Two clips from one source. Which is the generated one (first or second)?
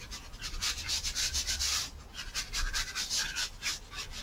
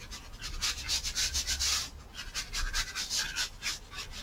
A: first